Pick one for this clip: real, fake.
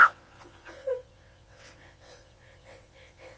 fake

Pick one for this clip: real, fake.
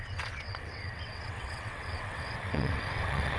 fake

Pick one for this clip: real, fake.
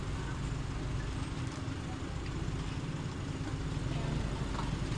real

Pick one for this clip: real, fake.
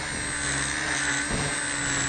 real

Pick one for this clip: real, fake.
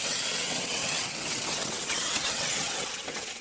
fake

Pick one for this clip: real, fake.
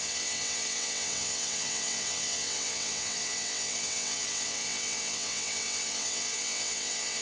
fake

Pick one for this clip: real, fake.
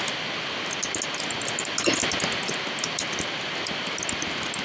real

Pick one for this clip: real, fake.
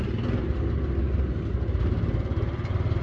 real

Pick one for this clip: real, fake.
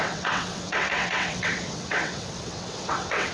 fake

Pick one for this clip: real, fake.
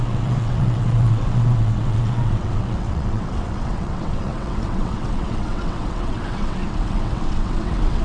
fake